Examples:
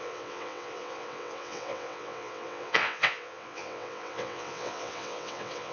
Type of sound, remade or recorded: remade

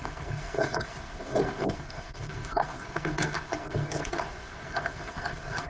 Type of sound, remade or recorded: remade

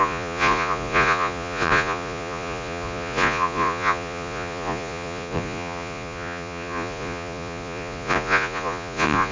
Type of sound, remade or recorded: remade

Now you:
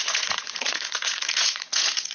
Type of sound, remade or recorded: remade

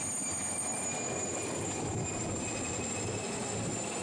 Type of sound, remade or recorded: recorded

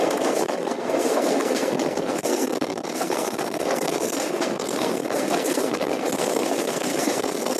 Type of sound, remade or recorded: remade